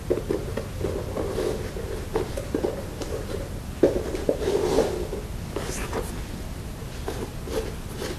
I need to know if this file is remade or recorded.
recorded